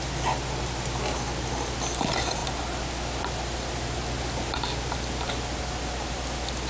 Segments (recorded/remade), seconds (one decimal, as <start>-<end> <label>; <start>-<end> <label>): 0.0-6.7 recorded